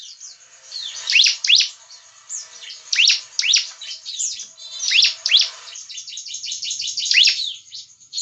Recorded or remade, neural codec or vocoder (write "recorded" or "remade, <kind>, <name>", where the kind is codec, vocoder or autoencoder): remade, vocoder, BigVGAN v2